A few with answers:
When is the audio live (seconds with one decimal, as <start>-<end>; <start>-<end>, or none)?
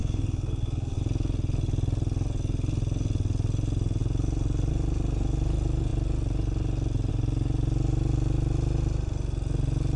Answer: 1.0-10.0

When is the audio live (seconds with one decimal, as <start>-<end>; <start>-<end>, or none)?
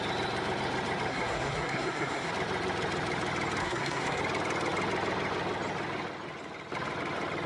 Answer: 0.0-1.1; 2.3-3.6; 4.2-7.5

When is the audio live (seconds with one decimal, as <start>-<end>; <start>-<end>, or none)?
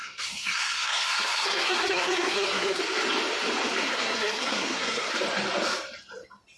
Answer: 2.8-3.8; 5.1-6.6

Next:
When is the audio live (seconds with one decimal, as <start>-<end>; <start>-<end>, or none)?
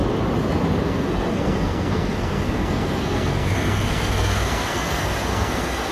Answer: 0.0-0.8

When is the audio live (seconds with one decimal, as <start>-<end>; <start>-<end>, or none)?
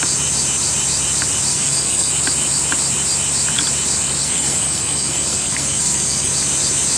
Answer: 0.0-1.5; 2.1-4.2; 6.3-7.0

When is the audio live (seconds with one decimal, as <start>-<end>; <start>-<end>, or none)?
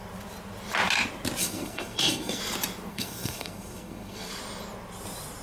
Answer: 0.0-1.4; 2.4-2.9; 4.3-5.4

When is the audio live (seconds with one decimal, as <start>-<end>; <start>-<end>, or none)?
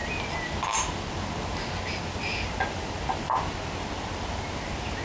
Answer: 0.0-5.0